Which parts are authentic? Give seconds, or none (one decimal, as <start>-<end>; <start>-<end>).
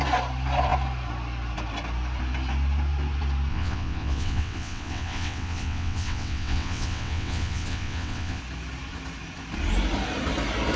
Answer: 0.0-3.5; 8.4-10.8